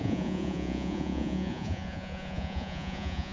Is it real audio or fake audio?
fake